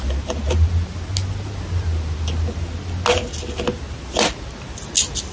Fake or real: real